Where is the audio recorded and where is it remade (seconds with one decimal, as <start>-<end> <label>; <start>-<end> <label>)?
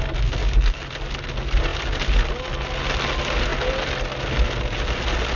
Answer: 0.0-0.4 recorded; 0.4-0.9 remade; 0.9-5.4 recorded